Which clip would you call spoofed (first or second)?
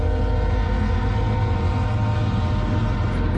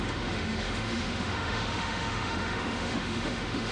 second